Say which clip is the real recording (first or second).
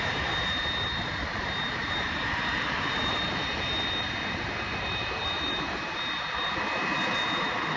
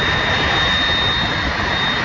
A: second